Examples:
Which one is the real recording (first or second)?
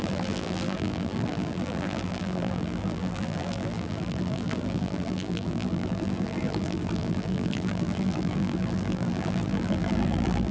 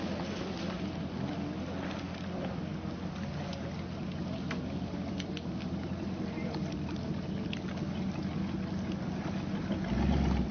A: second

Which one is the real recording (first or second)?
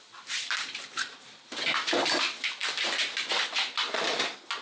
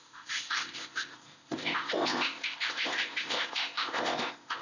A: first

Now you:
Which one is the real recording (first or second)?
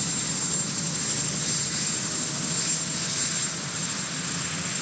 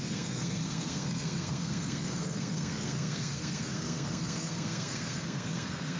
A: first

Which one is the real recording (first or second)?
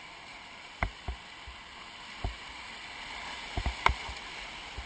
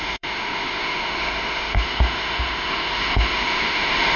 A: first